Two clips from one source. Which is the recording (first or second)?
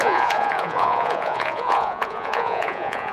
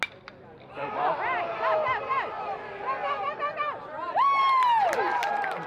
second